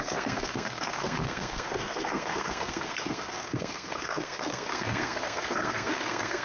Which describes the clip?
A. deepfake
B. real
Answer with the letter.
A